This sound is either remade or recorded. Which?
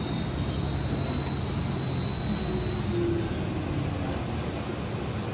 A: recorded